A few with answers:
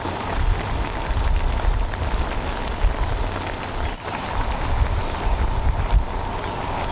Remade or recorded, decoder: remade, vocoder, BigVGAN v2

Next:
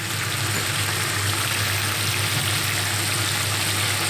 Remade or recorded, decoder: recorded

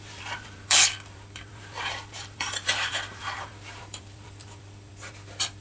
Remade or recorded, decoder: remade, vocoder, BigVGAN v2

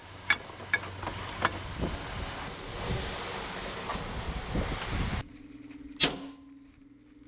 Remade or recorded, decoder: recorded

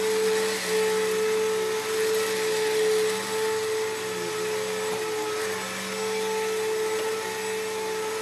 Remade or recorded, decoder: recorded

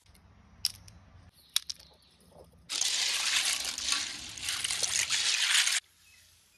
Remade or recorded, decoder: recorded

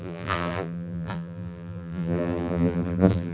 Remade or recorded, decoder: remade, vocoder, BigVGAN v2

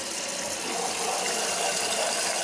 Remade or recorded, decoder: recorded